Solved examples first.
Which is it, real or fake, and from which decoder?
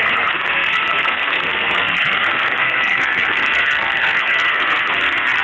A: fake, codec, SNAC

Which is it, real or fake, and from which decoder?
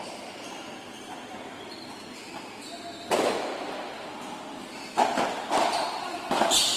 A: real